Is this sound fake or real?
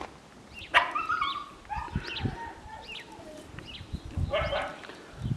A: real